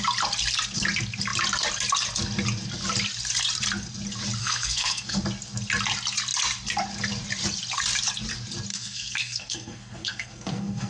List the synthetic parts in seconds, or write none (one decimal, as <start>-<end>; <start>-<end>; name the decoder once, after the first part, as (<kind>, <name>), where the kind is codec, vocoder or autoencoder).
4.4-5.2 (codec, SNAC); 8.7-10.9